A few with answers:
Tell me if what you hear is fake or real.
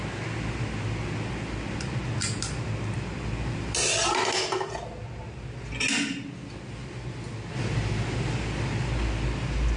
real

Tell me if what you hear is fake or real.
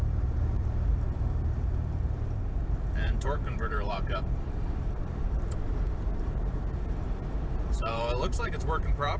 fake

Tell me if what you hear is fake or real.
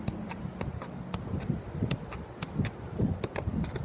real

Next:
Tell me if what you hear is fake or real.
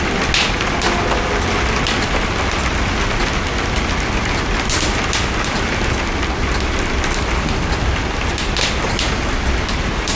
real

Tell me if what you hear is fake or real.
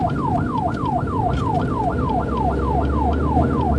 real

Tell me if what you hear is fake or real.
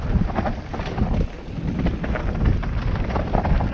fake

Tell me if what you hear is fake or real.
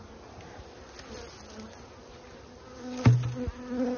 real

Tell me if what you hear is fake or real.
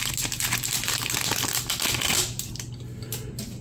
real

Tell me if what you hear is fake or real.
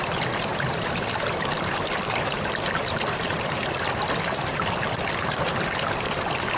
fake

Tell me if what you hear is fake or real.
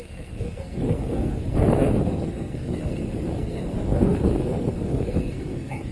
fake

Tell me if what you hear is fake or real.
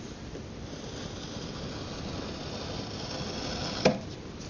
real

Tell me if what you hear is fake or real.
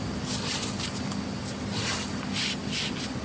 real